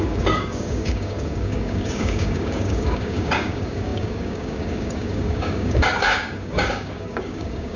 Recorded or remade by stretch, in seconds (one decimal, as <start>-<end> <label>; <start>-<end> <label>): 0.0-7.8 remade